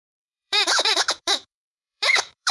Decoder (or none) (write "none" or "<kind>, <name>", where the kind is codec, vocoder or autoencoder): autoencoder, DAC-VAE